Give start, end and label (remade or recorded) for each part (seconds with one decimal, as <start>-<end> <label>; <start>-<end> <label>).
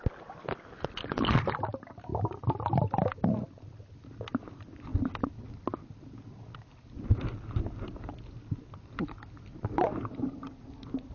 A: 0.0-11.1 recorded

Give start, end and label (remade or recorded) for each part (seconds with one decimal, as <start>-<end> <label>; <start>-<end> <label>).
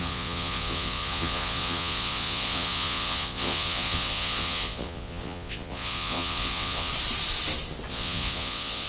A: 0.0-6.9 remade; 6.9-7.9 recorded; 7.9-8.9 remade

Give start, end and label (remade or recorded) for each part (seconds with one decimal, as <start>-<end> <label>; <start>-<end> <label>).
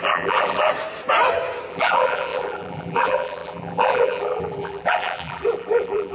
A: 0.0-0.7 remade; 0.7-1.7 recorded; 1.7-6.1 remade